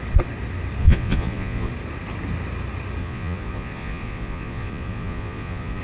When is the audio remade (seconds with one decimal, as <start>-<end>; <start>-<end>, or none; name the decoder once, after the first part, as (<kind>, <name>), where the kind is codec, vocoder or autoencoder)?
0.8-1.7 (vocoder, Vocos); 3.0-5.8